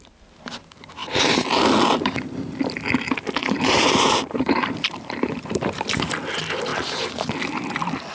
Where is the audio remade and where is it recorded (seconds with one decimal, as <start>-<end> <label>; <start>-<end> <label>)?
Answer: 0.0-3.4 recorded; 3.4-6.0 remade; 6.0-8.1 recorded